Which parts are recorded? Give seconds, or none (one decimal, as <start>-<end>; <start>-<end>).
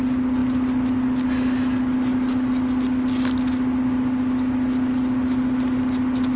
0.0-6.4